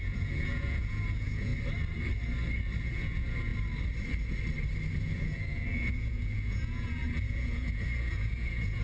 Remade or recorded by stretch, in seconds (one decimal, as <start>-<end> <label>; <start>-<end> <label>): 0.0-1.5 remade; 1.5-2.8 recorded; 2.8-3.5 remade; 3.5-5.0 recorded; 5.0-8.8 remade